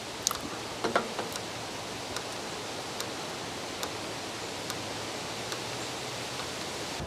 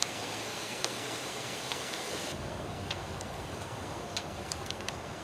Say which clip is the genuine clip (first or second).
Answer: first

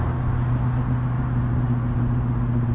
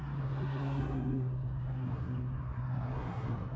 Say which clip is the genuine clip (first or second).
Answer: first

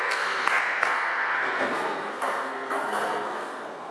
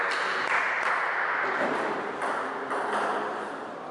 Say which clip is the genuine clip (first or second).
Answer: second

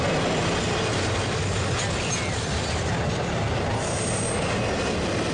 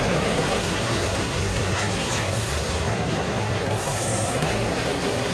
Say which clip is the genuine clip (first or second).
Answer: first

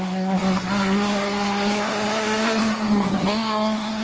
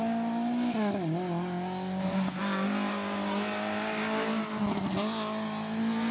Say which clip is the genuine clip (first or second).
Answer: second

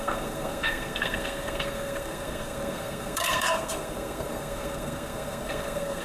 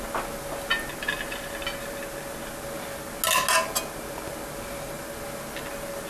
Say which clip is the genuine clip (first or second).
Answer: second